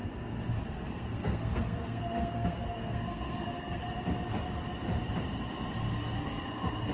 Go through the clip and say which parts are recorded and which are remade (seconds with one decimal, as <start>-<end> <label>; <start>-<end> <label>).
0.0-0.6 recorded; 0.6-3.8 remade; 3.8-6.2 recorded; 6.2-6.9 remade